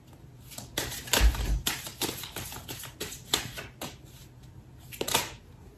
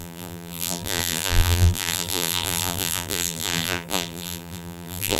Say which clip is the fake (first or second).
second